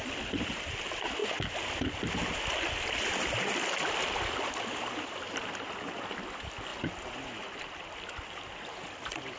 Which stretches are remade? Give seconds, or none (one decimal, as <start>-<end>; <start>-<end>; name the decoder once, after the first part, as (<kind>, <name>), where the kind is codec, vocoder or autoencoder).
0.0-1.2 (vocoder, BigVGAN v2); 5.9-9.4